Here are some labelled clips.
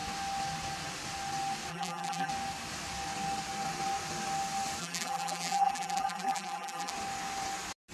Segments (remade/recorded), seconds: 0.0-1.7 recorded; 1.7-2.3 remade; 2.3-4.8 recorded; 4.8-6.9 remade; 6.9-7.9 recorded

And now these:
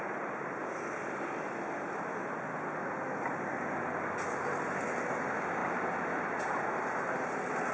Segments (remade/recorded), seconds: 0.0-7.7 recorded

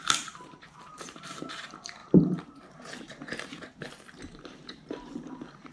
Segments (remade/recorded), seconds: 0.0-5.7 remade